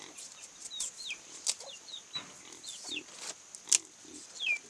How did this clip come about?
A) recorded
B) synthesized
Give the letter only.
A